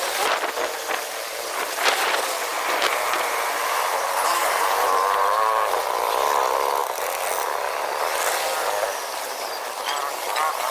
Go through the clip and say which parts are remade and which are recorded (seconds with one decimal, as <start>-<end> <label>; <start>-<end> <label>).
0.0-2.5 recorded; 2.5-5.8 remade; 5.8-10.7 recorded